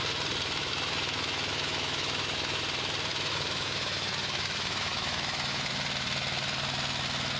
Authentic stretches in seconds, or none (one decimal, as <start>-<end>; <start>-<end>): 0.0-0.6; 2.6-3.1; 5.7-7.4